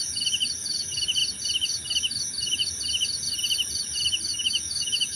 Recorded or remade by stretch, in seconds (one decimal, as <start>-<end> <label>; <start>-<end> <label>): 0.0-4.3 recorded; 4.3-5.2 remade